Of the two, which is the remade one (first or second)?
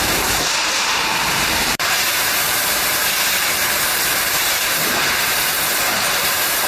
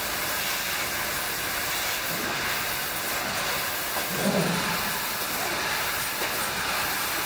first